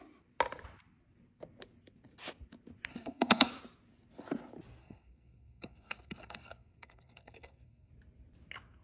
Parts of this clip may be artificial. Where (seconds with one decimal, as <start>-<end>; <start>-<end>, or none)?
2.9-3.5; 4.8-7.9